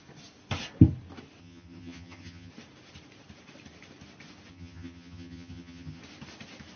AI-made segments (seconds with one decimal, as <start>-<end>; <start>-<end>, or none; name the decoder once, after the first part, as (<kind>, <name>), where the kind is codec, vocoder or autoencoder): 1.4-2.5 (vocoder, HiFi-GAN); 4.5-6.0